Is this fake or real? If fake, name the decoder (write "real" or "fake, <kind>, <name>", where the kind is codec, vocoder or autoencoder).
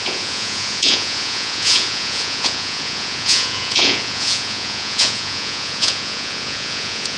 fake, vocoder, Vocos